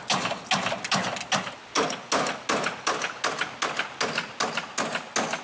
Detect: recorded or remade recorded